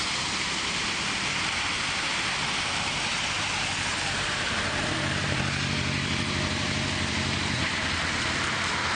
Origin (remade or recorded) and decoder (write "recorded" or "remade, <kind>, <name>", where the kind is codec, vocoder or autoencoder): remade, vocoder, BigVGAN v2